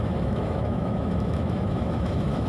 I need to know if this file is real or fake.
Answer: fake